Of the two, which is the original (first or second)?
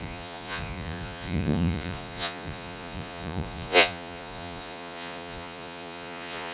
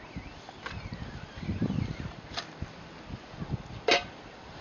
second